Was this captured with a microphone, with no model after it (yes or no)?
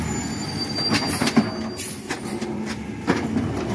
yes